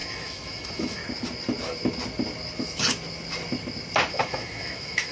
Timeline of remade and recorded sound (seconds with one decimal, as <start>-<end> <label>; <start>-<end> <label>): 0.0-1.0 remade; 1.0-4.1 recorded; 4.1-5.1 remade